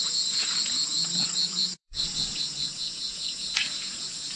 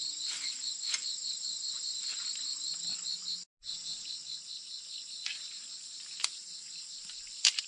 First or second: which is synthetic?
first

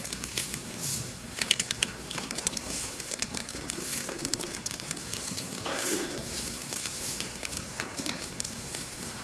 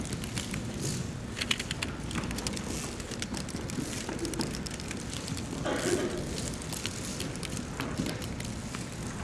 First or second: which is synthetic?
first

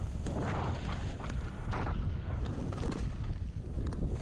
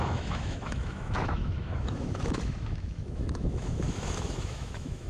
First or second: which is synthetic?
second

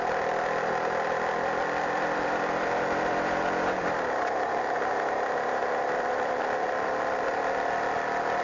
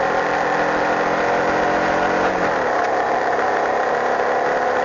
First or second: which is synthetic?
first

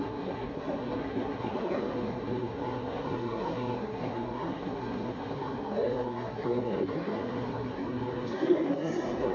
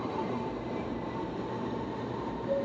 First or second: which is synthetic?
first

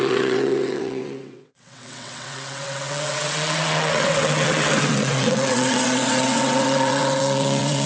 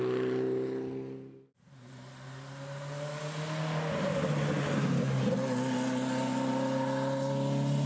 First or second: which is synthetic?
first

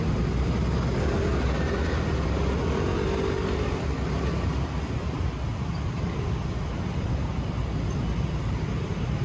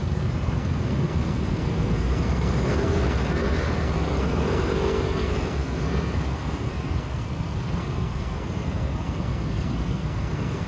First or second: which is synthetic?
second